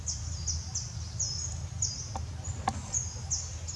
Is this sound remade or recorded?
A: recorded